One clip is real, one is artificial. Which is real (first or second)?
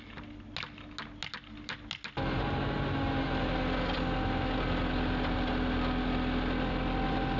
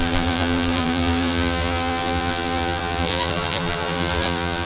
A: first